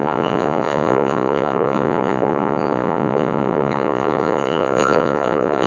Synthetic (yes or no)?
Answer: yes